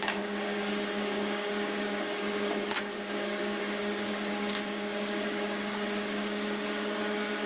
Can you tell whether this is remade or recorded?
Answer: remade